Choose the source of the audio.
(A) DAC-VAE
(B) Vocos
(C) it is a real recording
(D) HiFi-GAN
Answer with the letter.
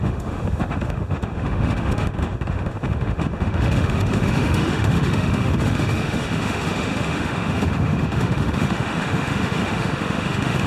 A